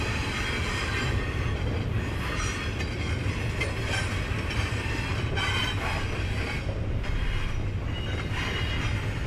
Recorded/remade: remade